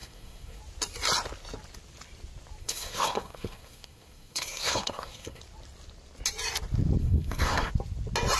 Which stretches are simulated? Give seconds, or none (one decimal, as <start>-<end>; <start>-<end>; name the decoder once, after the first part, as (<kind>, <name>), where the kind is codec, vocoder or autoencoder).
0.0-0.6 (codec, SNAC); 2.6-5.4; 7.0-7.7